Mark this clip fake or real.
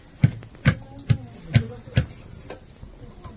real